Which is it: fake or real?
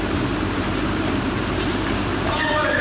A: fake